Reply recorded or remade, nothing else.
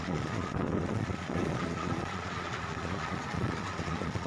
remade